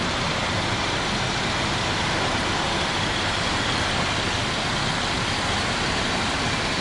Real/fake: real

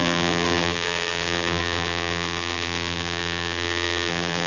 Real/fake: fake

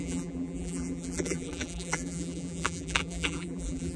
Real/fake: fake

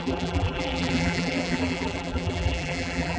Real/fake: fake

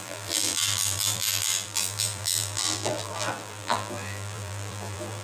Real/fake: fake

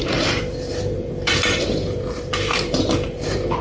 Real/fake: fake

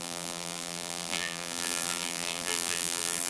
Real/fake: fake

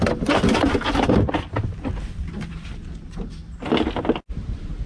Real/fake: real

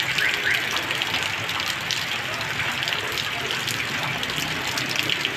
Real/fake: real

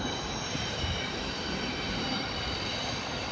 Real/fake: fake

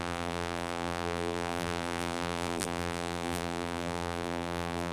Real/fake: fake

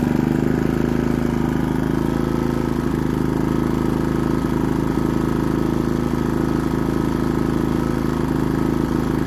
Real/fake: real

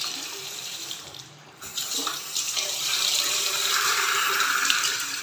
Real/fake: fake